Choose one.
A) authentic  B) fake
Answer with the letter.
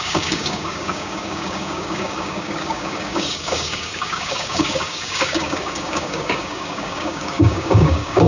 B